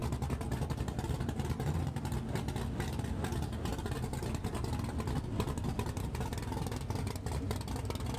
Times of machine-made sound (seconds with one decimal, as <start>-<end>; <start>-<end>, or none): 0.0-2.0